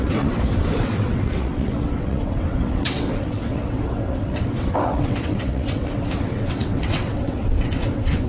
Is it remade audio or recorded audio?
remade